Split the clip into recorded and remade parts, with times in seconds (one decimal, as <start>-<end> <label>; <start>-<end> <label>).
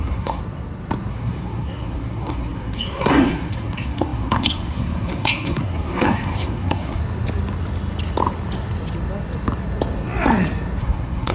0.0-0.4 remade; 0.4-1.1 recorded; 1.1-7.0 remade; 7.0-10.8 recorded; 10.8-11.3 remade